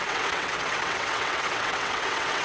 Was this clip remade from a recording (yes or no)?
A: yes